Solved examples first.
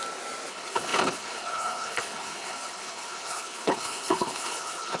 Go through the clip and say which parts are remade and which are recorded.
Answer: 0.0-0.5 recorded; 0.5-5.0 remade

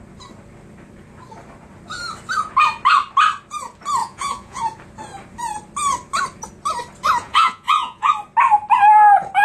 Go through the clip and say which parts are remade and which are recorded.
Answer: 0.0-4.0 recorded; 4.0-4.6 remade; 4.6-7.2 recorded; 7.2-8.1 remade; 8.1-9.4 recorded

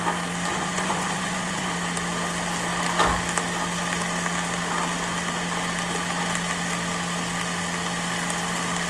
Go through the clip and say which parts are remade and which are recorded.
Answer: 0.0-0.5 recorded; 0.5-1.7 remade; 1.7-8.9 recorded